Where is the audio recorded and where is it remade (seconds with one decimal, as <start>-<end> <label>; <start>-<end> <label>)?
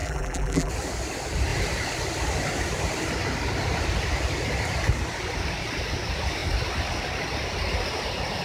0.0-0.7 remade; 0.7-8.4 recorded